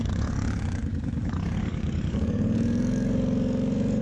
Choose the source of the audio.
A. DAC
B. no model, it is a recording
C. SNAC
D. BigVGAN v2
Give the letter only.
A